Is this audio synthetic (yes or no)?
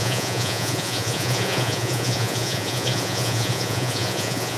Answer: yes